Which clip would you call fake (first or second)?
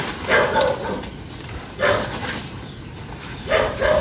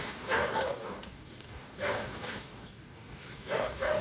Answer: second